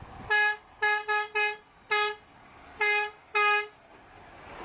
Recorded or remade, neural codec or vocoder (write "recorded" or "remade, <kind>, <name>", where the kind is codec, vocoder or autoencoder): recorded